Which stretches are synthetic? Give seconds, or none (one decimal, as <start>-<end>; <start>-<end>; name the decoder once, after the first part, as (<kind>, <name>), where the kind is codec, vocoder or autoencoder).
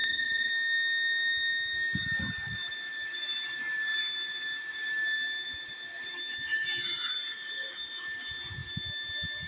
0.0-0.5 (vocoder, HiFi-GAN)